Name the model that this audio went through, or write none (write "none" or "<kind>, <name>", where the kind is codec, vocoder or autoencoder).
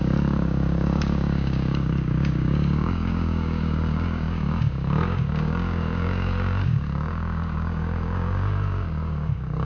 codec, DAC